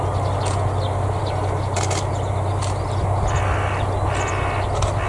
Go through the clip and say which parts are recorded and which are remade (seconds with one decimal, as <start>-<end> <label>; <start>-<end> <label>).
0.0-5.1 recorded